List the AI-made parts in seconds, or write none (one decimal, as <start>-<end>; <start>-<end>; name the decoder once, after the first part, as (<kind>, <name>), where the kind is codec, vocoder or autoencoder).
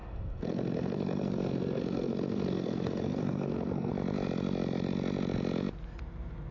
0.0-3.9 (codec, SNAC)